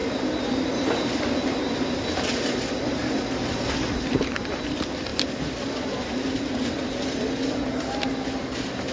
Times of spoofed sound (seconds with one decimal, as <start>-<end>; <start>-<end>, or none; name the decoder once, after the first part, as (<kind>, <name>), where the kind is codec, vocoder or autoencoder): 0.0-1.2 (vocoder, BigVGAN v2); 5.1-8.1